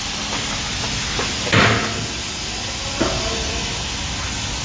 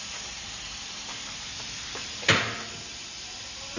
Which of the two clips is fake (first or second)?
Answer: second